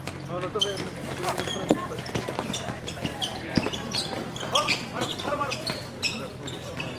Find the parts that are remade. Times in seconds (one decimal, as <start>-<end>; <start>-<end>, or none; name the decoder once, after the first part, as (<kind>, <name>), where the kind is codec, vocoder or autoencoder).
1.8-4.2 (vocoder, BigVGAN v2); 4.9-5.8